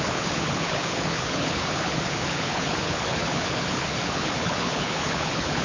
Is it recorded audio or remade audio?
remade